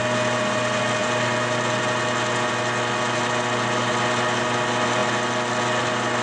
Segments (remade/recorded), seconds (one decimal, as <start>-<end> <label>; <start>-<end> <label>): 0.0-6.2 recorded